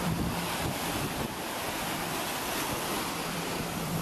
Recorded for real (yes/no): no